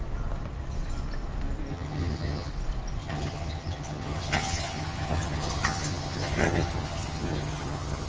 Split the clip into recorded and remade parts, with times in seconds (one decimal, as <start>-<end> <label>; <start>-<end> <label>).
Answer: 0.0-1.7 recorded; 1.7-2.5 remade; 2.5-3.0 recorded; 3.0-8.1 remade